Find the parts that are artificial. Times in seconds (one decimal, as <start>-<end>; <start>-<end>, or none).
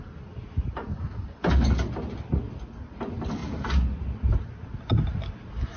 none